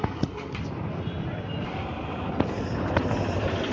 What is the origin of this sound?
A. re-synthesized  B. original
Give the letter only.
B